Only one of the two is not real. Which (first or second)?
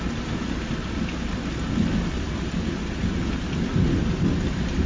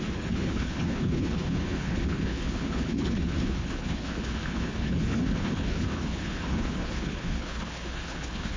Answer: second